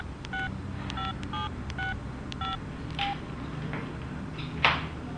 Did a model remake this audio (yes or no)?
no